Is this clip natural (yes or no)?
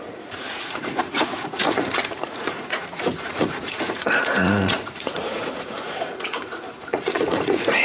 no